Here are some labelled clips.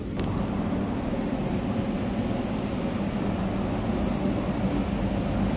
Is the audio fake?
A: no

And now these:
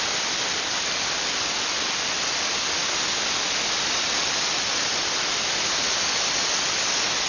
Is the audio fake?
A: no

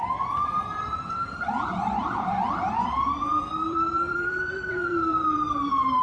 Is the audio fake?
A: yes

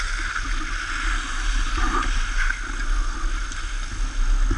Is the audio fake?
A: no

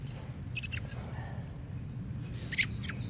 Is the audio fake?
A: no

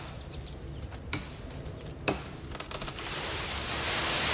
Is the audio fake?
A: no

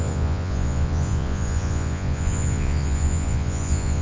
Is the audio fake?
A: yes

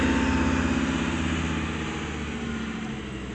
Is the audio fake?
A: no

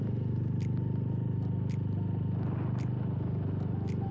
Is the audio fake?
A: no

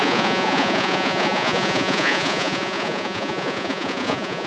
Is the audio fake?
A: yes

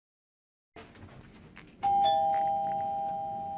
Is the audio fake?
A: no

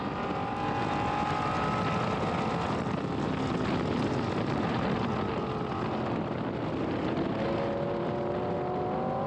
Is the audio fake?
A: no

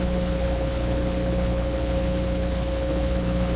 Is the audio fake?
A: yes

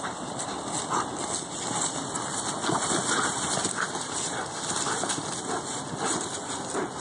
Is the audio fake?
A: no